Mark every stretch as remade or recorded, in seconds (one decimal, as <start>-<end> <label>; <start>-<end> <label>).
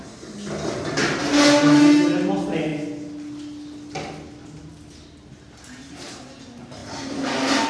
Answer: 0.0-7.7 recorded